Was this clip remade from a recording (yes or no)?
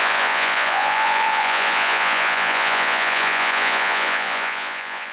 yes